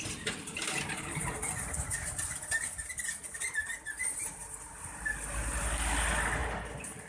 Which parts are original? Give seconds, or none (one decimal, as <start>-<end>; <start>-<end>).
0.0-7.1